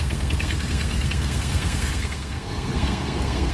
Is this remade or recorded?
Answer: remade